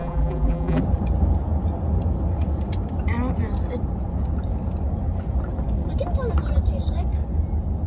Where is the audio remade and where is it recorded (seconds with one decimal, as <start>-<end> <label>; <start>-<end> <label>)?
0.0-0.8 remade; 0.8-7.9 recorded